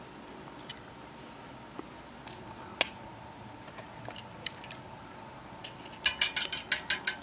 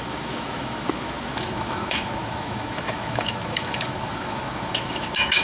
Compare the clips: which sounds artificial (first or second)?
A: second